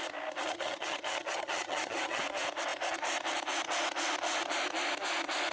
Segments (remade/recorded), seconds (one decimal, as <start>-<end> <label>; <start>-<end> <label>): 0.0-0.4 recorded; 0.4-2.2 remade; 2.2-5.5 recorded